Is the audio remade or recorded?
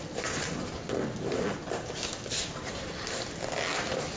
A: recorded